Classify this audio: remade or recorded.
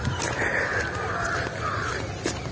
recorded